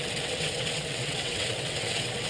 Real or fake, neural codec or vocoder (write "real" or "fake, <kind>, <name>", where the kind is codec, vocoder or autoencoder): fake, vocoder, WaveNeXt